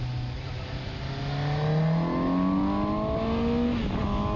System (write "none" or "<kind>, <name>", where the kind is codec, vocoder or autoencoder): none